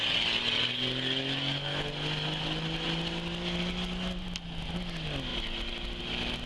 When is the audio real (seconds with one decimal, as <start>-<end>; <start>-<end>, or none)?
0.0-6.5